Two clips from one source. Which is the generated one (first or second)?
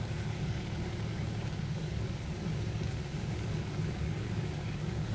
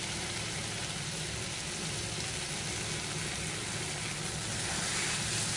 first